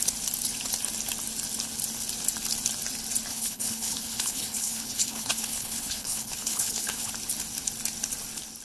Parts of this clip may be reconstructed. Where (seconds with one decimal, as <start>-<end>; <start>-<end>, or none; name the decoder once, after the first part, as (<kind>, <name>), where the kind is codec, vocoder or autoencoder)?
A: 3.3-7.1 (codec, HILCodec)